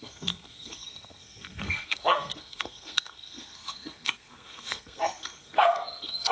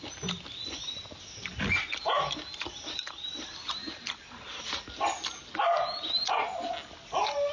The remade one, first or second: first